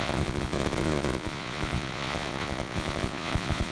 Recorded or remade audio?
remade